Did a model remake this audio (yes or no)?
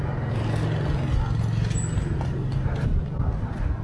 no